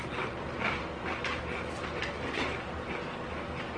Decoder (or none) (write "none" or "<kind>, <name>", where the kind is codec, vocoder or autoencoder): none